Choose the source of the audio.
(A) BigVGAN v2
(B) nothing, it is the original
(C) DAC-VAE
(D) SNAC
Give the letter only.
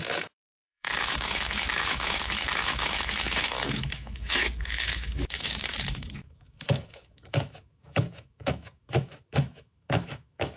C